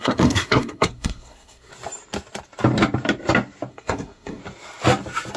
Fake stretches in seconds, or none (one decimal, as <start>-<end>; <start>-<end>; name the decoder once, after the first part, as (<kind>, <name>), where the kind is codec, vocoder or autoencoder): 0.0-1.7 (codec, SNAC); 3.7-4.4